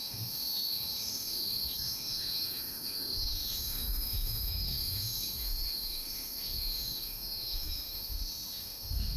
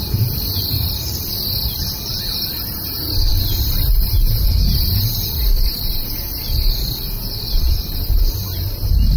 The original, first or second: second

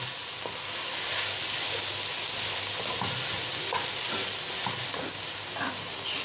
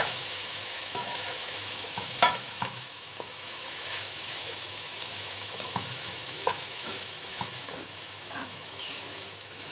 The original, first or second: first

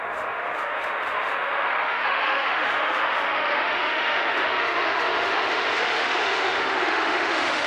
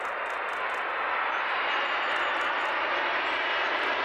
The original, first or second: second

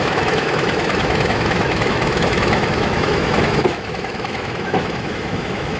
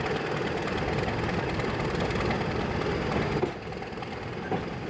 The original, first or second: second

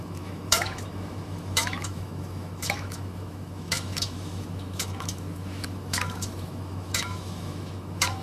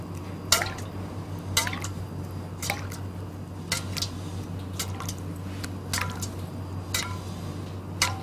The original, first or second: second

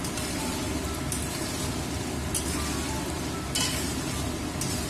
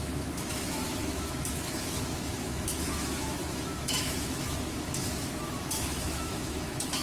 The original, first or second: first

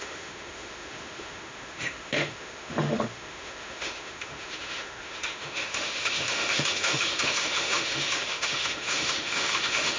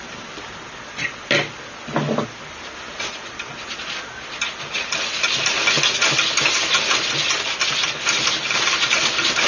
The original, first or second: second